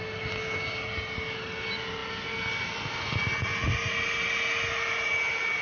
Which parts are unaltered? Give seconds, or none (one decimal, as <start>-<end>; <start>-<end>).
0.0-5.6